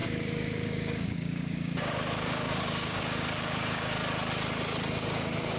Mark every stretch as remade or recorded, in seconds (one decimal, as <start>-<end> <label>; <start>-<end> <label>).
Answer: 0.0-4.0 remade; 4.0-4.9 recorded; 4.9-5.6 remade